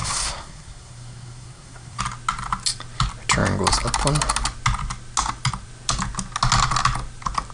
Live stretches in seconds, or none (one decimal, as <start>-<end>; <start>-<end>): 2.0-7.5